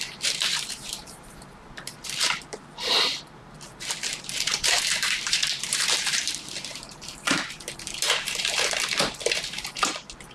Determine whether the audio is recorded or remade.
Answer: remade